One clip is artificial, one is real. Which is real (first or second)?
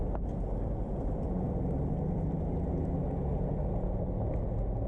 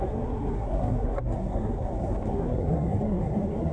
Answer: first